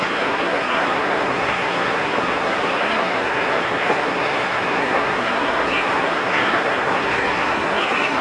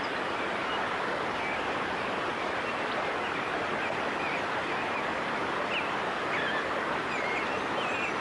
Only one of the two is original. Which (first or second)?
second